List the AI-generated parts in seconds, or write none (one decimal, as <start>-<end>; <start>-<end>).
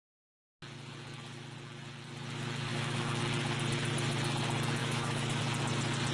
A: 2.7-3.2; 4.8-5.4